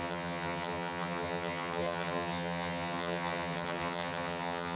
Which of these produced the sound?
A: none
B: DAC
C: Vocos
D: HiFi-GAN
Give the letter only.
D